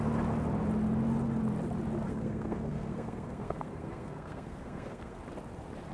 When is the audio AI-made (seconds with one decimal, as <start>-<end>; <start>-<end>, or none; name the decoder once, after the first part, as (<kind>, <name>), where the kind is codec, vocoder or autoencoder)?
2.1-5.2 (codec, SNAC)